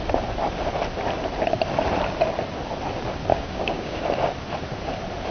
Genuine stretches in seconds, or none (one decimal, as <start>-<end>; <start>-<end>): 0.0-3.3; 4.0-5.3